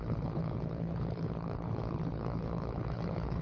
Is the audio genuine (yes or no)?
no